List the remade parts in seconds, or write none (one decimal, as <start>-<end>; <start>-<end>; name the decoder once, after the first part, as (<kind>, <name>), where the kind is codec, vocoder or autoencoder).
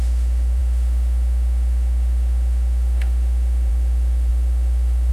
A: 0.0-5.1 (autoencoder, DAC-VAE)